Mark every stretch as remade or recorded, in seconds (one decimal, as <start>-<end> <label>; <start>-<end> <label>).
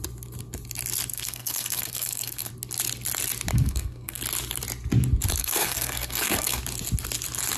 0.0-1.1 recorded; 1.1-2.5 remade; 2.5-3.5 recorded; 3.5-4.2 remade; 4.2-5.4 recorded; 5.4-6.6 remade; 6.6-7.6 recorded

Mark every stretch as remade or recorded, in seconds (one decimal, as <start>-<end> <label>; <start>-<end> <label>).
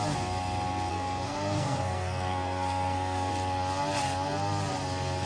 0.0-0.9 recorded; 0.9-3.3 remade; 3.3-5.3 recorded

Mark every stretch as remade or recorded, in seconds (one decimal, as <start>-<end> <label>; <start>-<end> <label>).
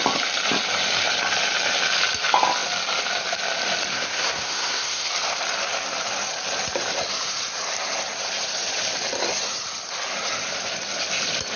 0.0-3.9 recorded; 3.9-5.1 remade; 5.1-11.6 recorded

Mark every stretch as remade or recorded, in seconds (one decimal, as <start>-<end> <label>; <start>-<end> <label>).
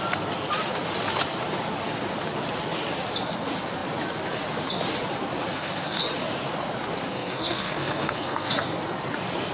0.0-5.5 recorded; 5.5-6.0 remade; 6.0-7.1 recorded; 7.1-8.5 remade; 8.5-9.5 recorded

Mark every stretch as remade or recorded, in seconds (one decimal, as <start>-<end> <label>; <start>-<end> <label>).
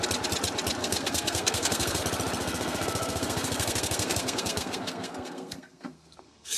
0.0-0.8 recorded; 0.8-2.0 remade; 2.0-2.4 recorded; 2.4-6.6 remade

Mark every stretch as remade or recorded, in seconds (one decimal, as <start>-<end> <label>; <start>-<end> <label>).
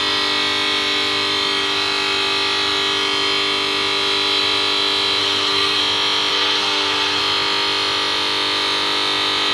0.0-5.2 recorded; 5.2-5.8 remade; 5.8-6.3 recorded; 6.3-7.2 remade; 7.2-9.5 recorded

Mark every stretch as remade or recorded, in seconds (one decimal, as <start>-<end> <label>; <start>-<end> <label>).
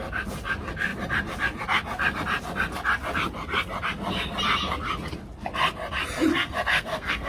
0.0-6.3 recorded; 6.3-7.3 remade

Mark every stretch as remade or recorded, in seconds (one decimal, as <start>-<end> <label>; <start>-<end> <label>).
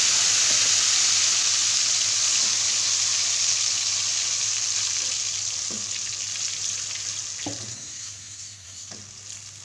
0.0-7.7 recorded; 7.7-8.9 remade; 8.9-9.6 recorded